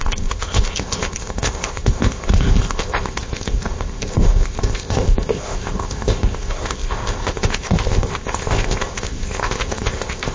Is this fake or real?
fake